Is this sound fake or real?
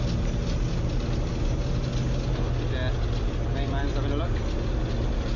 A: real